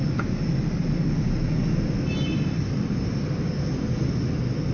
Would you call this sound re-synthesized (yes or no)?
no